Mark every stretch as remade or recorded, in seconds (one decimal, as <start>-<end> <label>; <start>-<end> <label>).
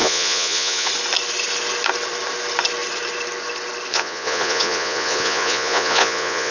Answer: 0.0-0.9 remade; 0.9-3.9 recorded; 3.9-6.5 remade